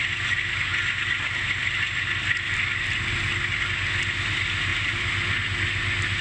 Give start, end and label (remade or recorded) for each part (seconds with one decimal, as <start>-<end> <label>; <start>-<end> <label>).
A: 0.0-4.7 recorded; 4.7-5.4 remade; 5.4-6.2 recorded